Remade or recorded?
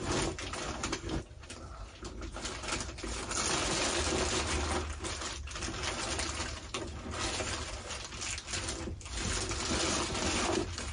recorded